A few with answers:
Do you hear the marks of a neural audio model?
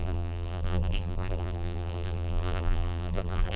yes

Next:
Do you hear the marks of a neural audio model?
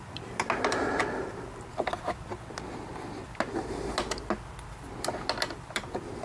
no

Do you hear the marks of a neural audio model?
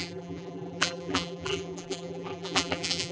yes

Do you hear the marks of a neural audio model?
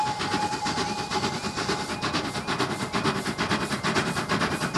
no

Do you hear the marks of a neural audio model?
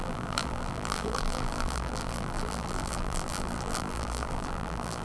yes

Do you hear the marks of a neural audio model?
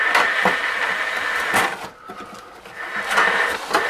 no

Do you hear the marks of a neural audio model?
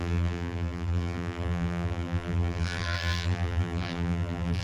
yes